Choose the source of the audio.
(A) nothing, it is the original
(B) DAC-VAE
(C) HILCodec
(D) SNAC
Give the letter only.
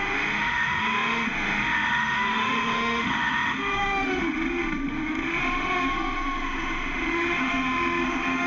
B